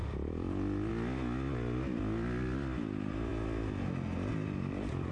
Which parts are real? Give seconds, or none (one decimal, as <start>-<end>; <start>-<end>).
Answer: 0.9-5.1

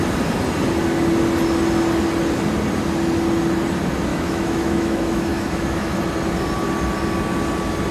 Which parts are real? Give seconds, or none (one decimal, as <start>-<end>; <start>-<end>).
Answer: 0.0-4.1; 6.0-7.9

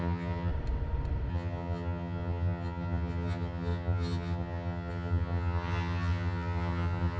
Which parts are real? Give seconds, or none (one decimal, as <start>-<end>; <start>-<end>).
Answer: 0.5-1.3

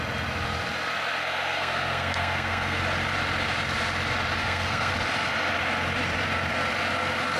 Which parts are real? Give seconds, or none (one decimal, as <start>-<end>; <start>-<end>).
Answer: 0.0-1.2; 2.8-4.4; 4.9-7.4

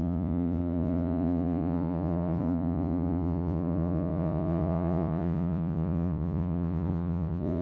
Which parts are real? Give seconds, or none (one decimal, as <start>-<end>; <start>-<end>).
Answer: none

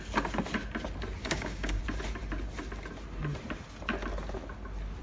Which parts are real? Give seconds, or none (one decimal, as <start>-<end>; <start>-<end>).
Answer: 0.0-1.2; 1.8-5.0